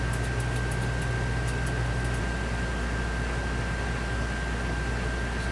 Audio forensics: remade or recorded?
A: recorded